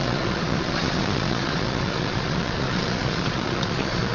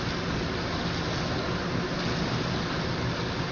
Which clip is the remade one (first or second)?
first